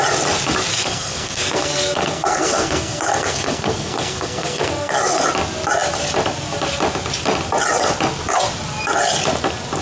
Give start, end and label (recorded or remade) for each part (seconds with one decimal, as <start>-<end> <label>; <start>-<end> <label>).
0.0-0.7 recorded; 0.7-5.2 remade; 5.2-9.8 recorded